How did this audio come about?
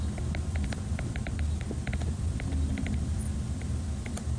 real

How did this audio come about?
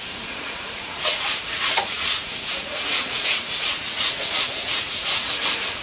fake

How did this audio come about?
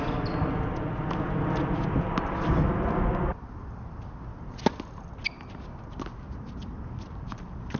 real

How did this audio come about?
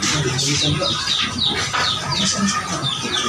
real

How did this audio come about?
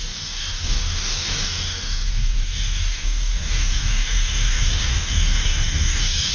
fake